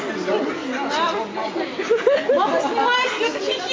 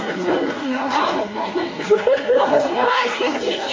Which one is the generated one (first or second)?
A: second